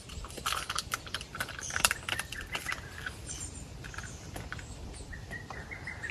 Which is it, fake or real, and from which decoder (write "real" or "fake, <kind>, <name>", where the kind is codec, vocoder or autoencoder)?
fake, vocoder, BigVGAN v2